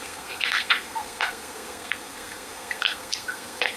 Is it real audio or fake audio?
fake